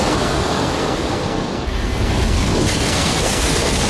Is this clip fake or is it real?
fake